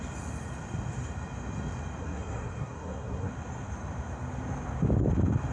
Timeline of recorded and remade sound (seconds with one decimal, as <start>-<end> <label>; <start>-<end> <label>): 0.0-2.0 recorded; 2.0-3.3 remade; 3.3-5.5 recorded